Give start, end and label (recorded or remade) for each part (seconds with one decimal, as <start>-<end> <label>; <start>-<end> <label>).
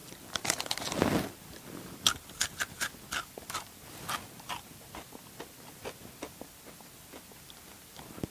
0.0-8.3 recorded